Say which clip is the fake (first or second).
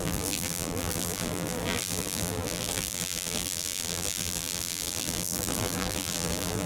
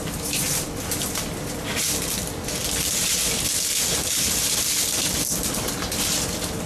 first